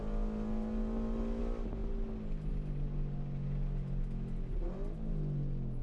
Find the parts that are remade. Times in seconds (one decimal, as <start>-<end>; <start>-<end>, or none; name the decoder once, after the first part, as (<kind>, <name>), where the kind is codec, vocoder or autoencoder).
none